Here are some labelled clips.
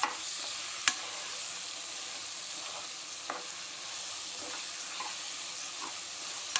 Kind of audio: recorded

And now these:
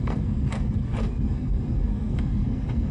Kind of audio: remade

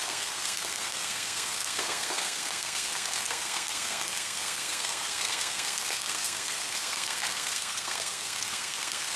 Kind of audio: remade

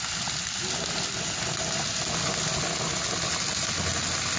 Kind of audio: recorded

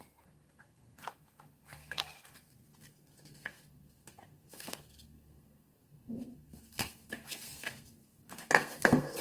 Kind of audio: remade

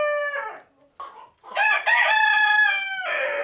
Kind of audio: recorded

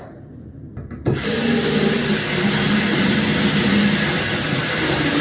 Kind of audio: recorded